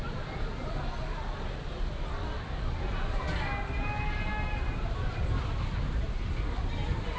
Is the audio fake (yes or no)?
no